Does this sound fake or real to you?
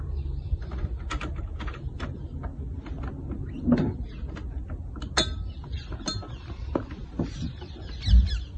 real